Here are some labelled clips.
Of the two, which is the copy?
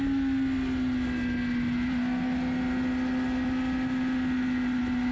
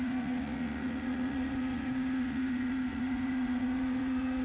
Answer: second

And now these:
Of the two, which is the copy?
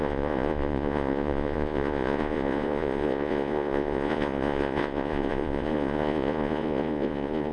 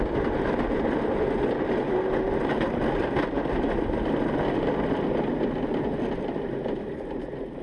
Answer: first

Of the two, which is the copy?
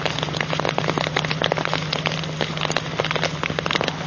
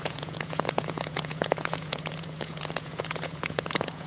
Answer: second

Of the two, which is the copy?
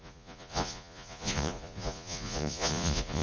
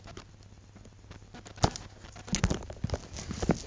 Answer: first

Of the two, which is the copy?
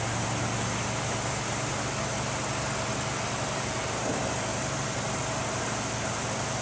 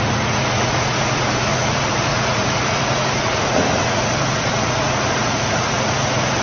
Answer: second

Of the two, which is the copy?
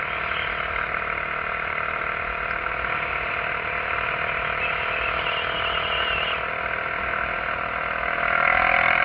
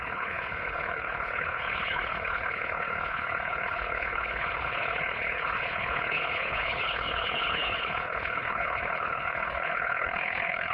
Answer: second